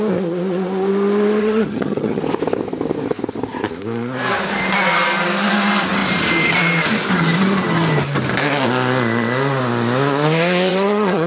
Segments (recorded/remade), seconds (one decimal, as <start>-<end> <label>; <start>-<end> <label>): 0.0-1.4 recorded; 1.4-2.2 remade; 2.2-10.7 recorded; 10.7-11.3 remade